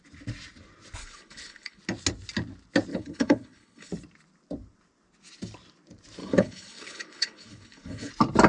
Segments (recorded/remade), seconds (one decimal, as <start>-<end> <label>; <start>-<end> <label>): 0.0-1.0 recorded; 1.0-1.8 remade; 1.8-2.9 recorded; 2.9-3.9 remade; 3.9-6.2 recorded; 6.2-8.1 remade; 8.1-8.5 recorded

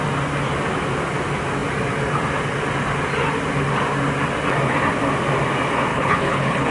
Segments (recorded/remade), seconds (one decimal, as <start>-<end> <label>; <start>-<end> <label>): 0.0-5.9 recorded; 5.9-6.7 remade